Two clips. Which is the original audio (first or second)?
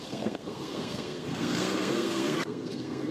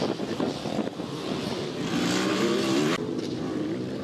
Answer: second